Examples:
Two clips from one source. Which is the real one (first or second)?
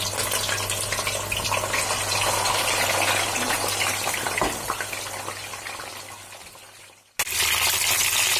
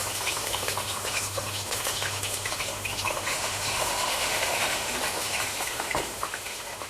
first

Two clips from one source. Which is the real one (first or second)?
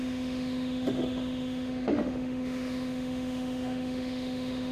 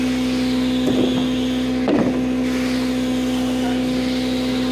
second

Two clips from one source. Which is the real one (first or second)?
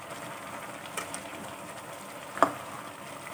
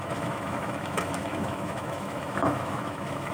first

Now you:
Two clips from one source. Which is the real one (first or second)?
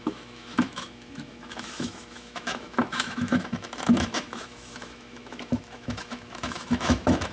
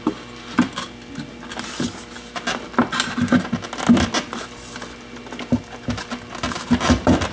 second